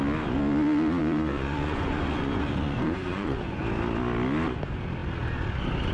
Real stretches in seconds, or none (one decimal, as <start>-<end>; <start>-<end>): 0.0-1.0; 3.6-5.9